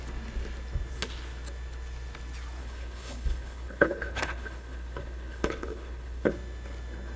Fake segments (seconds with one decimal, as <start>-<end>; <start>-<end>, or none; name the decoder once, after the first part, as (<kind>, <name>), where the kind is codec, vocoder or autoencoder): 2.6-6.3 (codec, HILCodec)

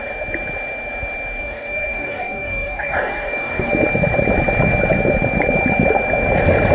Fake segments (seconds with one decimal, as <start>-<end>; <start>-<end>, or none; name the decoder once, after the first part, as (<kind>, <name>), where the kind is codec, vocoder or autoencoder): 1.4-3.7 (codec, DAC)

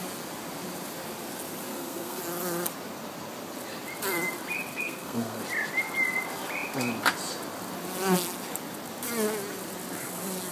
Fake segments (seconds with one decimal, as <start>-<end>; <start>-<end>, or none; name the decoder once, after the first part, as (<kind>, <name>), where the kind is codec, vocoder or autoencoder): 1.7-2.2 (codec, SNAC); 4.7-5.4

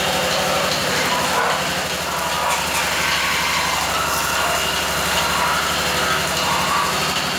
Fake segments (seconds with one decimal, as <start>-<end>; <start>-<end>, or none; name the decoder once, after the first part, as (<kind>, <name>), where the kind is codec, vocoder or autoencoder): none

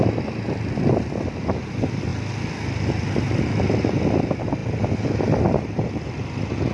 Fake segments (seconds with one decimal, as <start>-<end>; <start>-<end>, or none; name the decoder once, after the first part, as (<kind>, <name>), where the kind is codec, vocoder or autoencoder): none